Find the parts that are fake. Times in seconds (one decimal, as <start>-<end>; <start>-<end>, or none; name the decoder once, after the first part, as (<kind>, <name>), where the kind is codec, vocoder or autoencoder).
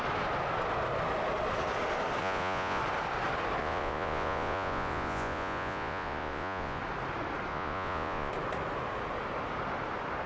2.2-2.8 (vocoder, Vocos); 3.6-6.8; 7.5-8.3